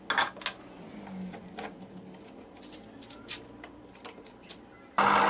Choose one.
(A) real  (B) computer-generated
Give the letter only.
A